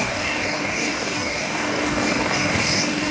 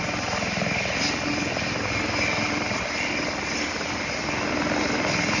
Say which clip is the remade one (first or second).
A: first